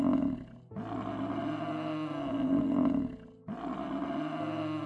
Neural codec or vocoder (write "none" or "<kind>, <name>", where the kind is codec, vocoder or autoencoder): none